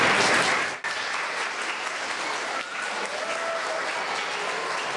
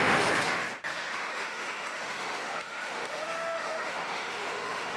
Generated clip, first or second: second